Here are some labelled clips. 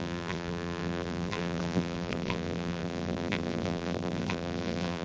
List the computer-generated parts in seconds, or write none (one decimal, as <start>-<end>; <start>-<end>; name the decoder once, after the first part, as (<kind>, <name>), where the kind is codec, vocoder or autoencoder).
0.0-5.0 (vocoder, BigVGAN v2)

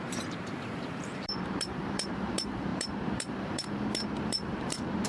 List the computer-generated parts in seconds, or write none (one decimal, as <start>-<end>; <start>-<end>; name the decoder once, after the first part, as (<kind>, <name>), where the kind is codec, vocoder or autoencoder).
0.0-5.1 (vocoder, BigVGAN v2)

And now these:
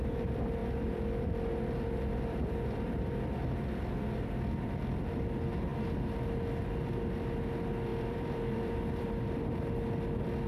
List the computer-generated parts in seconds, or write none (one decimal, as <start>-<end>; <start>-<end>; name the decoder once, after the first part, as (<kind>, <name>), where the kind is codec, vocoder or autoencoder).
0.6-5.2 (vocoder, BigVGAN v2); 7.9-9.5

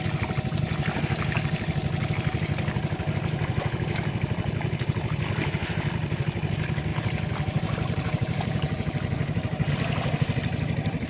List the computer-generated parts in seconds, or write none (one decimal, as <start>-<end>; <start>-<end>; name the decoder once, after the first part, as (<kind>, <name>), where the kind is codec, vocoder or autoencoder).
6.9-9.7 (vocoder, BigVGAN v2)

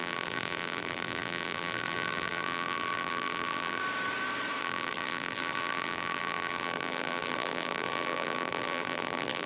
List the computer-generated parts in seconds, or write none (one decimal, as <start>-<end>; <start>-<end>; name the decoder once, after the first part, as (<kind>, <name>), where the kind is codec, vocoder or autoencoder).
0.0-3.8 (vocoder, BigVGAN v2); 4.6-9.5

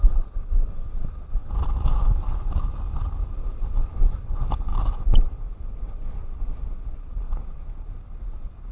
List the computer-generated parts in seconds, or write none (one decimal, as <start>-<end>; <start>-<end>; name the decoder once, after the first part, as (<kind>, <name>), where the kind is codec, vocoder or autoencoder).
0.0-0.7 (vocoder, BigVGAN v2); 1.4-4.2